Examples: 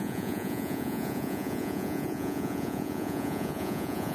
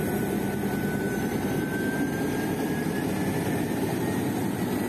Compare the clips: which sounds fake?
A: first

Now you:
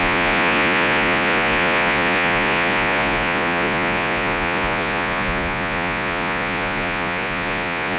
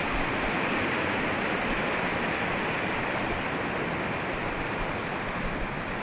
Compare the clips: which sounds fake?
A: first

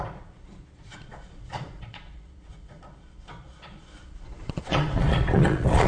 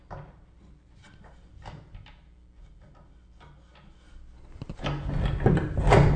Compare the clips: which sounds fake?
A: first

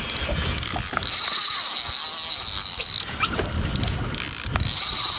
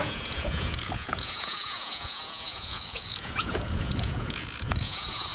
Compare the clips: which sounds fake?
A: second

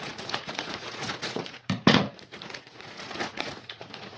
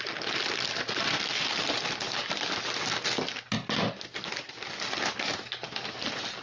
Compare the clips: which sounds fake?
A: first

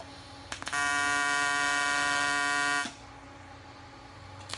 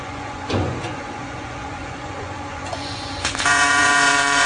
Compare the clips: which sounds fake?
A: second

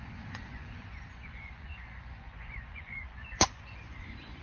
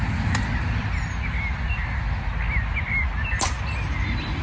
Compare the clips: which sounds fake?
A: first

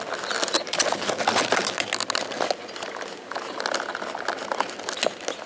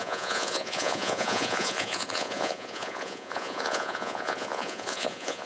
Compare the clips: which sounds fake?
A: second